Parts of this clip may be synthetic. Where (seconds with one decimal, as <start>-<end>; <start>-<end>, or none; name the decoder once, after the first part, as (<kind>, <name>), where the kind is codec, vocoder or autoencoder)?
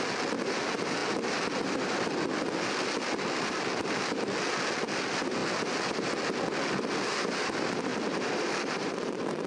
7.9-9.5 (vocoder, BigVGAN v2)